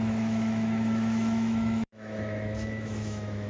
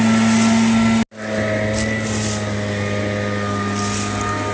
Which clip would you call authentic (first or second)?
second